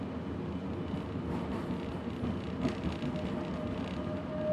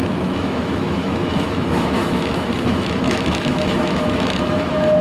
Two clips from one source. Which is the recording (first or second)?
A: first